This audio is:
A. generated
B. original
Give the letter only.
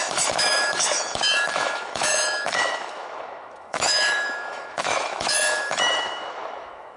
A